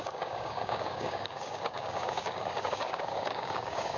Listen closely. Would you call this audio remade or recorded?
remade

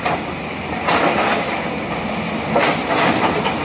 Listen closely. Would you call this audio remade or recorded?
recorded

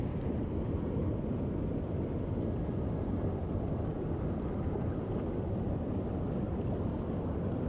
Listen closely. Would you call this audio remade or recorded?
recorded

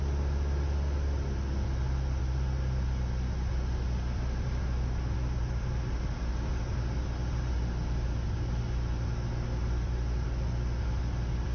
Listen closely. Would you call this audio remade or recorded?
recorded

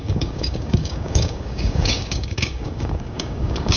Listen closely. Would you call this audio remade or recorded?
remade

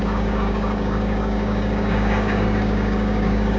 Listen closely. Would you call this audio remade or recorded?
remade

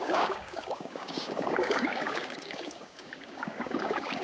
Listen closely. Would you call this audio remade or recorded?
remade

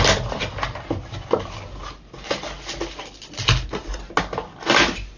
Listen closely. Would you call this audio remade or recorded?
recorded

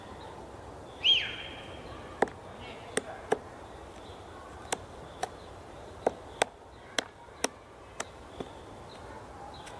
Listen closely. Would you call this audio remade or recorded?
recorded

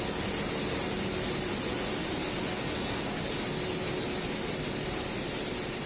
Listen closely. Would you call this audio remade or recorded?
recorded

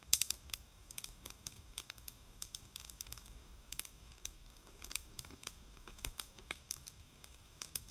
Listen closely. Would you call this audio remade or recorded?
remade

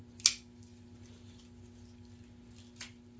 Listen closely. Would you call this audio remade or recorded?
recorded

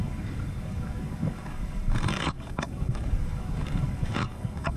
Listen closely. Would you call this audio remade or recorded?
remade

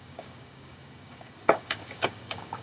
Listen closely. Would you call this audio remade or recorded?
remade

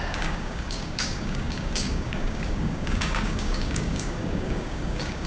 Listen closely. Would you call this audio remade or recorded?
remade